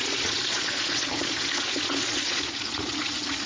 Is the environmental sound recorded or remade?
remade